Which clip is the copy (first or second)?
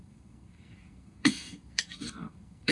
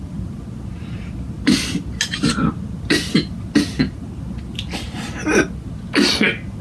first